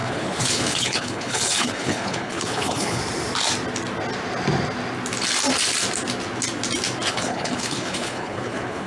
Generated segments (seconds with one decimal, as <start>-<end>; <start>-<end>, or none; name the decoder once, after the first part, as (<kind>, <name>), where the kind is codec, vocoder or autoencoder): 0.0-3.0 (codec, HILCodec); 7.1-8.9